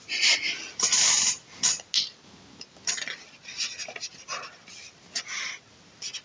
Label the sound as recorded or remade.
recorded